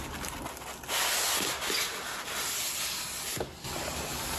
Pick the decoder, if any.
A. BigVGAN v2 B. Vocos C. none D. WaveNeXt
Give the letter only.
C